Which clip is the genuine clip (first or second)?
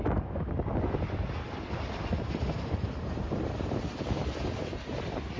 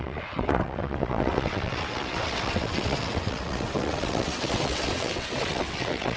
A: first